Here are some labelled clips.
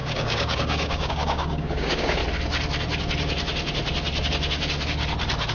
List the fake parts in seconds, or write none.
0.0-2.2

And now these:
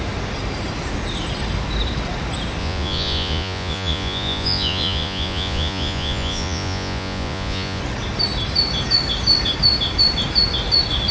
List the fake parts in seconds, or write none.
2.6-7.8

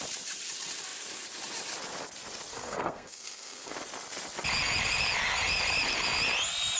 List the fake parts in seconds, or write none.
2.5-3.7

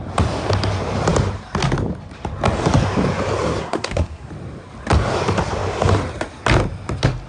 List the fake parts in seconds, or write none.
3.6-4.3

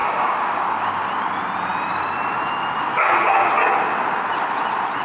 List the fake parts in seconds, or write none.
0.0-0.8